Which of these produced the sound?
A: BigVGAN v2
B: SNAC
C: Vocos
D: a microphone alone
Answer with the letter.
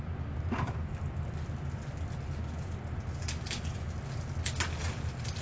D